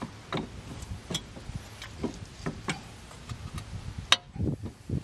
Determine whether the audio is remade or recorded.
recorded